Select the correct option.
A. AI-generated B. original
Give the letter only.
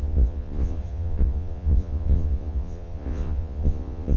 A